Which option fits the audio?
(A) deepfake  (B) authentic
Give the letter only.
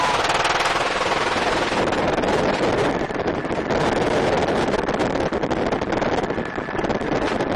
B